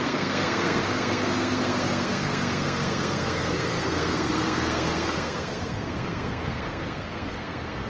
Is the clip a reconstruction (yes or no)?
yes